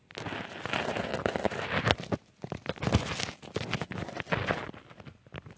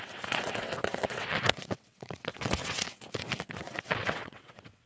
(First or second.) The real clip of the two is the first